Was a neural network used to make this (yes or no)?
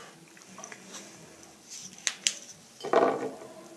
no